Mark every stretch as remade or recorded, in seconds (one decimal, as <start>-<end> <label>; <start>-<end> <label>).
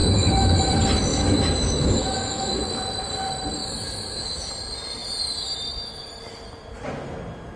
0.0-0.7 remade; 0.7-1.1 recorded; 1.1-2.6 remade; 2.6-3.6 recorded; 3.6-4.5 remade; 4.5-7.6 recorded